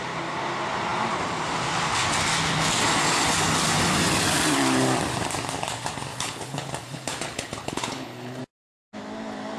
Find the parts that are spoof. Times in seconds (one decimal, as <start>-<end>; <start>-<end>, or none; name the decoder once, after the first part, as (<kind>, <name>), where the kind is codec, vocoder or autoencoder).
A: 6.1-8.4 (codec, HILCodec)